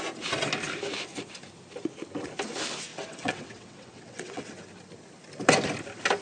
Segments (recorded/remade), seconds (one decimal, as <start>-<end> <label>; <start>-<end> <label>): 0.0-2.9 recorded; 2.9-4.4 remade; 4.4-6.2 recorded